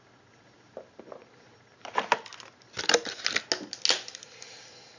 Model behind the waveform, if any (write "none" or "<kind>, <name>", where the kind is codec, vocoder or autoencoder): none